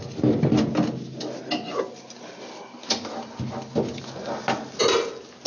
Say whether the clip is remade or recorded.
recorded